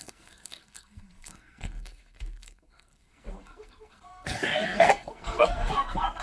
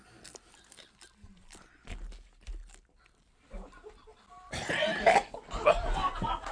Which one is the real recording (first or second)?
second